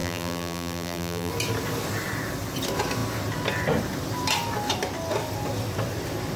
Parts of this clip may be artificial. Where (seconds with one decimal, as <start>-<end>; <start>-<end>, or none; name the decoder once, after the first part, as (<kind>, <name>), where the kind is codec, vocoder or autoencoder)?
0.0-1.3 (vocoder, BigVGAN v2)